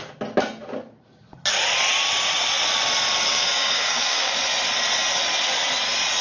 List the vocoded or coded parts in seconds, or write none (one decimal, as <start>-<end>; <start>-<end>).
3.3-4.4